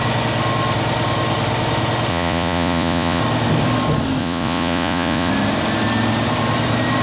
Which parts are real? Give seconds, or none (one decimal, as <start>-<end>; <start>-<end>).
0.0-2.1; 3.2-4.2; 5.3-7.0